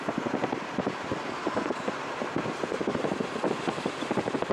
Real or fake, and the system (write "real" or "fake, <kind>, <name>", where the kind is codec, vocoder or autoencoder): real